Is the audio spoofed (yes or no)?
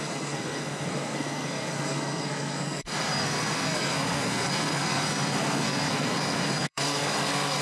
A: yes